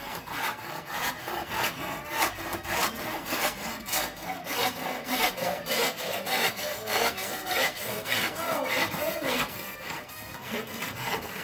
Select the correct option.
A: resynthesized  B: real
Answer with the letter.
A